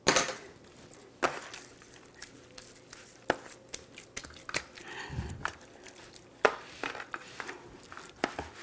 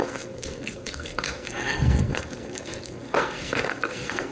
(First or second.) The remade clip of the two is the second